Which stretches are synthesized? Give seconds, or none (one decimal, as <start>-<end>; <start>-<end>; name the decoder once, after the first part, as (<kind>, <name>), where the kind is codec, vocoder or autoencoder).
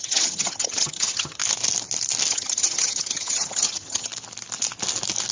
0.0-1.4 (vocoder, HiFi-GAN); 2.3-4.1